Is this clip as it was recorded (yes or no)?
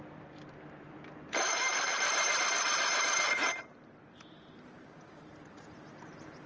no